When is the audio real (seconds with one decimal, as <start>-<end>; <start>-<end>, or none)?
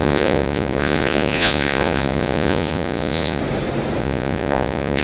3.4-4.0